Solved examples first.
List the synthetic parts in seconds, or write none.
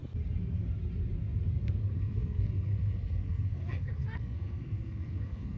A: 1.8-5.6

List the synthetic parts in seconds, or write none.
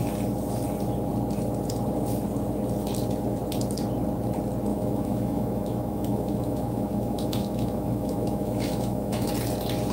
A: 4.7-9.3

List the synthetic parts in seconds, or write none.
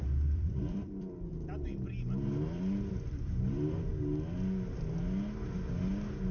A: 0.0-1.3; 2.9-3.9; 5.8-6.3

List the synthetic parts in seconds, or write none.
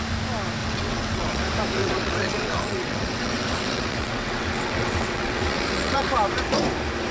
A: 0.6-1.4; 1.8-6.1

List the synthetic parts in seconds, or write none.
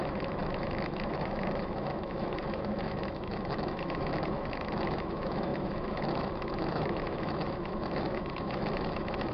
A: 0.0-9.3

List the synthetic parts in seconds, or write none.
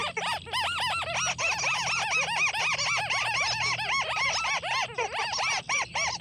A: none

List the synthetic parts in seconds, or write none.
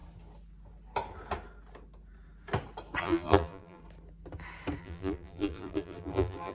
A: 3.0-3.8; 4.8-6.5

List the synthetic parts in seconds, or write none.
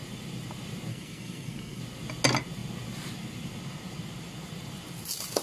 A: 0.9-1.8